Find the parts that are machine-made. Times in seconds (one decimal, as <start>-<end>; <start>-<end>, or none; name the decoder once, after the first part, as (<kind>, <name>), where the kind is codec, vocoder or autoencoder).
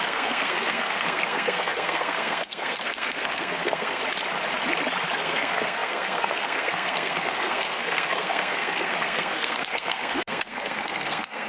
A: 0.0-4.0 (codec, SNAC); 5.2-11.5